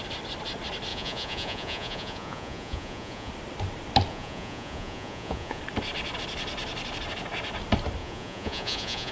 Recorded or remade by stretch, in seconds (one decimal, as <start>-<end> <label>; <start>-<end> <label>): 0.0-0.9 recorded; 0.9-3.3 remade; 3.3-4.1 recorded; 4.1-5.6 remade; 5.6-8.0 recorded; 8.0-9.1 remade